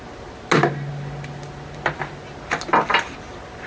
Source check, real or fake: real